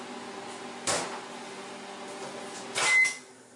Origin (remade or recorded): recorded